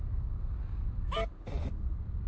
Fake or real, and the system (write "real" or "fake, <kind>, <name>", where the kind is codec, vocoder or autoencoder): real